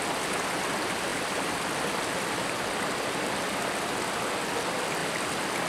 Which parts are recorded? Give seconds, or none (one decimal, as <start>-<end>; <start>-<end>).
0.0-5.7